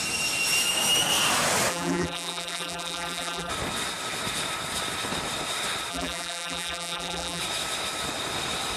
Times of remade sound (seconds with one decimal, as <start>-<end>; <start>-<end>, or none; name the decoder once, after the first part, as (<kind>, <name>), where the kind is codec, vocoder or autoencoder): 1.7-3.5 (vocoder, BigVGAN v2); 5.9-7.4